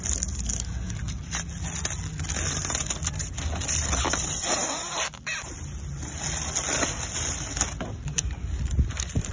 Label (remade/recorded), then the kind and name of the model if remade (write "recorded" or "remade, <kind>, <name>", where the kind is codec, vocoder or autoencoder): recorded